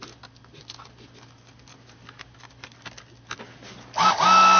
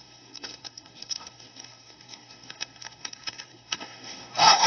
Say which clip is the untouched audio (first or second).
first